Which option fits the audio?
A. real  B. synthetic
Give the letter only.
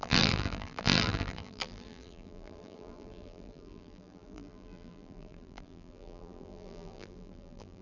B